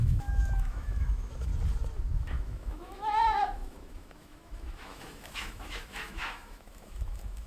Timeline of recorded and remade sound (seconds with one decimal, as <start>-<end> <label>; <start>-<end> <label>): 0.0-1.5 remade; 1.5-2.2 recorded; 2.2-7.5 remade